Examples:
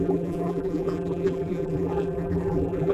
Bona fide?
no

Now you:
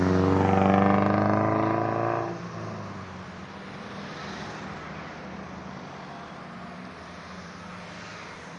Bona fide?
yes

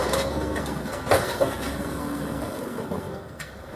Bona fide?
no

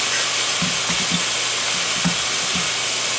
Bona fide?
yes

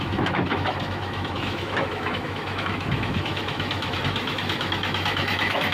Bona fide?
no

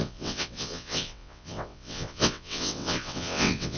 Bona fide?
no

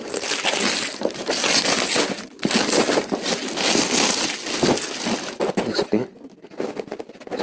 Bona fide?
yes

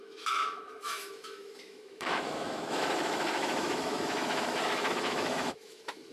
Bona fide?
no